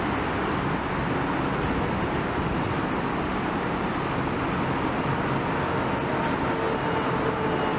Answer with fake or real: real